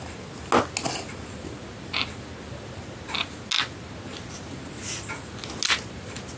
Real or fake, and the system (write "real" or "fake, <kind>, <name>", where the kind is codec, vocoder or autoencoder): real